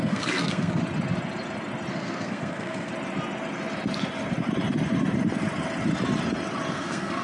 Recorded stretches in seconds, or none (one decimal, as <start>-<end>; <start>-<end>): 0.8-1.9; 2.9-6.7